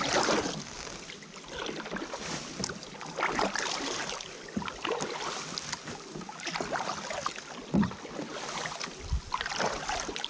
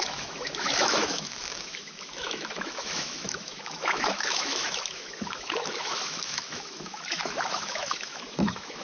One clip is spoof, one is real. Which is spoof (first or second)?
second